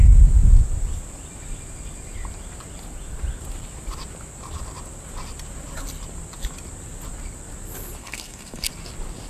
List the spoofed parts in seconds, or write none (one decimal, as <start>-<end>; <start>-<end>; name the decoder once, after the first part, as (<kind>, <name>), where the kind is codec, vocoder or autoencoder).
8.0-8.7 (codec, SNAC)